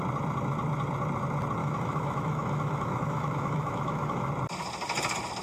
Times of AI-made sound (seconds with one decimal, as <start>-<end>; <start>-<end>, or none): 1.6-4.3

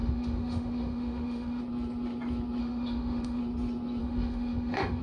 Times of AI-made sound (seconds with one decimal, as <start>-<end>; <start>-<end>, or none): 0.0-1.6; 2.6-3.4; 4.0-5.0

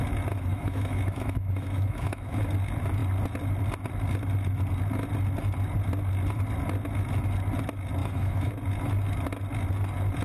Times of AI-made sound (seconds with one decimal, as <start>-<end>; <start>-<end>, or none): 0.5-2.4; 8.0-8.5

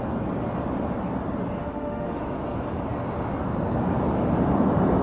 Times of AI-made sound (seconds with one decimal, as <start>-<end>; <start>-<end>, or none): 1.6-2.2